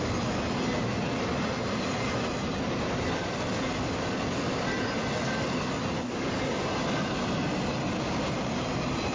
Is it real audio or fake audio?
real